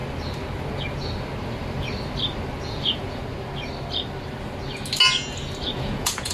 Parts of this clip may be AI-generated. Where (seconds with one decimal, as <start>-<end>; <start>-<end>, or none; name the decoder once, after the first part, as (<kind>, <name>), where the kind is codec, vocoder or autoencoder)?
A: 2.6-3.2 (vocoder, Vocos); 5.6-6.3

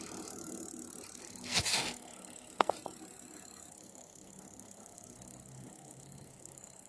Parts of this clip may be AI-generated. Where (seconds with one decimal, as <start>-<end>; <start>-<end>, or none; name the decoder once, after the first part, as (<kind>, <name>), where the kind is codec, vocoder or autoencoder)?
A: 1.2-2.7 (codec, SNAC); 3.7-6.9

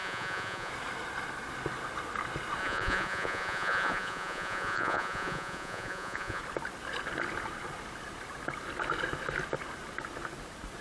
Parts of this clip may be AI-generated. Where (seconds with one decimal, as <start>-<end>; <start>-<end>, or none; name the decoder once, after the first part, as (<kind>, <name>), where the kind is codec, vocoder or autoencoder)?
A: 0.0-0.7 (vocoder, Vocos); 2.6-6.4

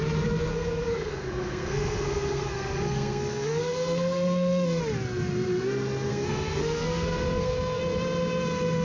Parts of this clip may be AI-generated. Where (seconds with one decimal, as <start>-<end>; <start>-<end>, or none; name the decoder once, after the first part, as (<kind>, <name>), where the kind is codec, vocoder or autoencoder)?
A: 0.5-4.8 (codec, SNAC); 6.1-7.8